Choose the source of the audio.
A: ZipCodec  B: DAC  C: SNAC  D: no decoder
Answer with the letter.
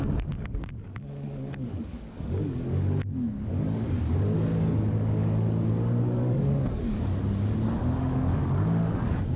B